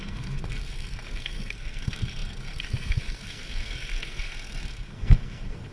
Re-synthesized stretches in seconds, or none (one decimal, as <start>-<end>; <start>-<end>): 0.0-5.7